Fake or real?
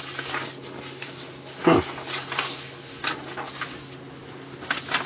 real